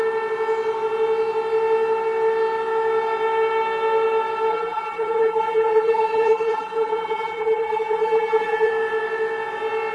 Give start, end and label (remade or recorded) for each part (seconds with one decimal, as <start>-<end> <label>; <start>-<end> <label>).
0.0-4.5 recorded; 4.5-8.7 remade; 8.7-9.9 recorded